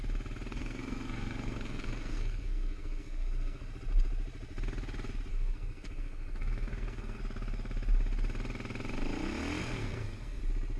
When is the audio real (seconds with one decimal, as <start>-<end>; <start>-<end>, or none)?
0.0-0.5; 3.7-5.3; 7.2-9.6; 10.4-10.8